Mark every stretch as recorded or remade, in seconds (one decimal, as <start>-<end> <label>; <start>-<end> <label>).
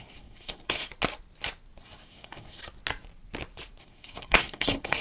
0.0-0.9 remade; 0.9-1.8 recorded; 1.8-2.6 remade; 2.6-3.8 recorded; 3.8-5.0 remade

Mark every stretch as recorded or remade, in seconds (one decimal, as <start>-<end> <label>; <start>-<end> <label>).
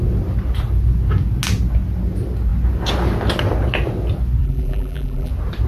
0.0-4.4 recorded; 4.4-5.3 remade; 5.3-5.7 recorded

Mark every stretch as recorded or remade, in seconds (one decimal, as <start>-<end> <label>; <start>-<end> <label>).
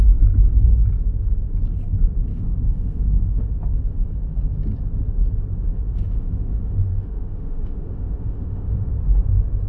0.0-2.3 recorded; 2.3-3.5 remade; 3.5-5.7 recorded; 5.7-8.9 remade; 8.9-9.7 recorded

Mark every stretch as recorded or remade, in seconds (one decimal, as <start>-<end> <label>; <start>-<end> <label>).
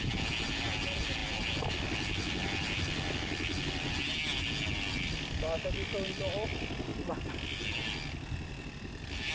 0.0-9.3 recorded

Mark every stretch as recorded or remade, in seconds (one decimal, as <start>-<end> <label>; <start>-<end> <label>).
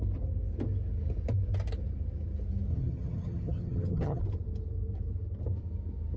0.0-2.7 recorded; 2.7-4.2 remade; 4.2-6.2 recorded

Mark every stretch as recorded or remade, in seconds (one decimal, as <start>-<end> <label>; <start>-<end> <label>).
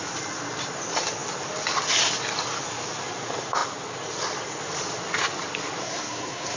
0.0-5.8 recorded; 5.8-6.6 remade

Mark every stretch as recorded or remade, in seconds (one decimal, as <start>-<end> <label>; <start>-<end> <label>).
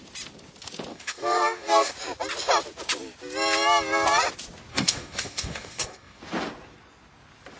0.0-0.9 recorded; 0.9-1.9 remade; 1.9-4.7 recorded; 4.7-6.2 remade; 6.2-7.6 recorded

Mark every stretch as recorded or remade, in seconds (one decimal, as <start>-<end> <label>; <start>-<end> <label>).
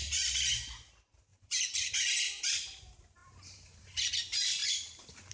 0.0-5.3 remade